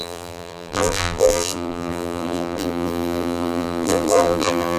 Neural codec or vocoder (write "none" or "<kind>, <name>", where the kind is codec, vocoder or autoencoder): vocoder, BigVGAN v2